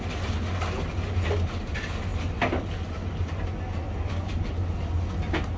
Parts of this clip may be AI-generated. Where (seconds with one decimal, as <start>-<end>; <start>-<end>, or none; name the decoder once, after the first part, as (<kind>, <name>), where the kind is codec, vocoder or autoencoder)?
none